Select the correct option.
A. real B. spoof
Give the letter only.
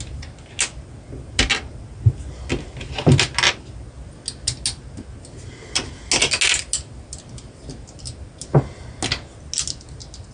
A